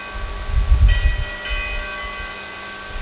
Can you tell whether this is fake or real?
real